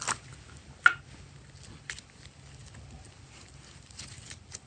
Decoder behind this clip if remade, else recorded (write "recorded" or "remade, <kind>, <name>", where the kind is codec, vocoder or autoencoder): recorded